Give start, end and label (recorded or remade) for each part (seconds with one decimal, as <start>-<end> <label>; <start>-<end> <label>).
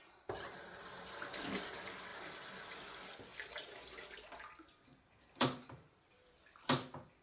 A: 0.0-3.3 recorded; 3.3-4.0 remade; 4.0-4.9 recorded; 4.9-6.4 remade; 6.4-7.2 recorded